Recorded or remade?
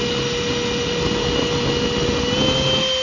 recorded